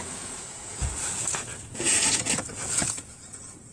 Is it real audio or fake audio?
fake